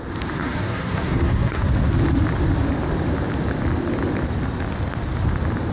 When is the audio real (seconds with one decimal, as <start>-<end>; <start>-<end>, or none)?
0.0-0.4; 1.6-5.7